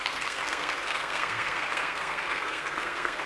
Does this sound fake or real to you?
fake